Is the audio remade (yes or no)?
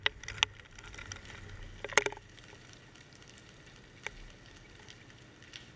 no